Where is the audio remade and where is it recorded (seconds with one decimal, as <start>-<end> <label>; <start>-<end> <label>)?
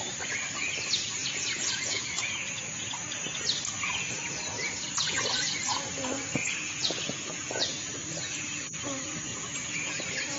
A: 0.0-1.2 recorded; 1.2-2.9 remade; 2.9-6.4 recorded; 6.4-7.9 remade; 7.9-9.3 recorded; 9.3-10.0 remade; 10.0-10.4 recorded